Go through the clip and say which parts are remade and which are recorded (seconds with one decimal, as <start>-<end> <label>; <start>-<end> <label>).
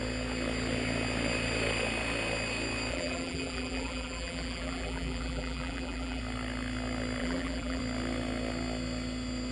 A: 0.0-2.9 recorded; 2.9-6.2 remade; 6.2-7.2 recorded; 7.2-7.8 remade; 7.8-9.5 recorded